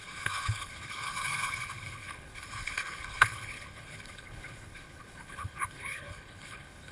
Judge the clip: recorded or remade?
remade